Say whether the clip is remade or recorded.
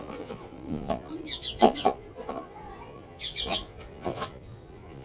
remade